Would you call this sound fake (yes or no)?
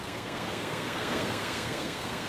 yes